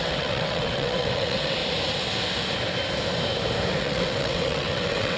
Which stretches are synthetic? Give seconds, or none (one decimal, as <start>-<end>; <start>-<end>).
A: 0.0-1.6; 3.8-5.2